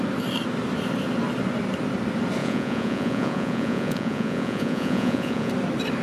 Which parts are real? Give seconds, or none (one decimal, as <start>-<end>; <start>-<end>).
0.0-2.4; 5.5-6.0